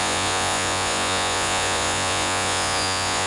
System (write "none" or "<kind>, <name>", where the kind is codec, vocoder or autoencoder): vocoder, Vocos